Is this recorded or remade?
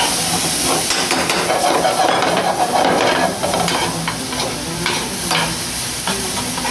recorded